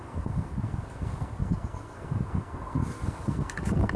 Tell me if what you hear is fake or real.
fake